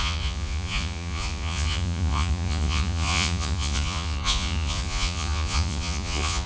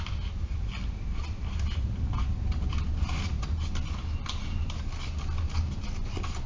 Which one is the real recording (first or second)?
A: second